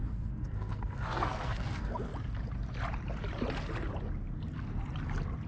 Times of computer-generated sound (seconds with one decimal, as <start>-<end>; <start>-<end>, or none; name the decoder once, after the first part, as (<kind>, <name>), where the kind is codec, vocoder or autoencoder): 0.0-2.1 (codec, SNAC)